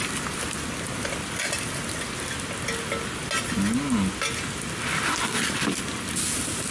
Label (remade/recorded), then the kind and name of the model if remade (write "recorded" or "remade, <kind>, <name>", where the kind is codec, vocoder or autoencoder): recorded